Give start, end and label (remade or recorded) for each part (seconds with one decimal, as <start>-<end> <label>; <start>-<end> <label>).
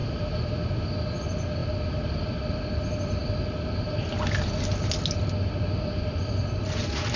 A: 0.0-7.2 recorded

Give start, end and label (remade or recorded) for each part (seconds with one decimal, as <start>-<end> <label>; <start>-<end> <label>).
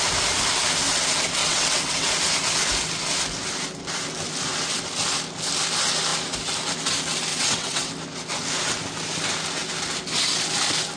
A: 0.0-1.4 recorded; 1.4-2.1 remade; 2.1-7.3 recorded; 7.3-7.9 remade; 7.9-11.0 recorded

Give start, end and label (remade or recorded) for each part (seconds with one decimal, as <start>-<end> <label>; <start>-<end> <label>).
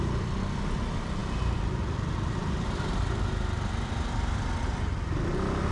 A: 0.0-5.7 recorded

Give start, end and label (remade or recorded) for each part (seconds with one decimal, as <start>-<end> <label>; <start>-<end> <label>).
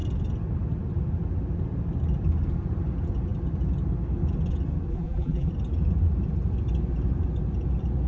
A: 0.0-4.9 recorded; 4.9-5.5 remade; 5.5-8.1 recorded